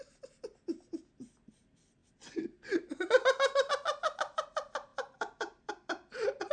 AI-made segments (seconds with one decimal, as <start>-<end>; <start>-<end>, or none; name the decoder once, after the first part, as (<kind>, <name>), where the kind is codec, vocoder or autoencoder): none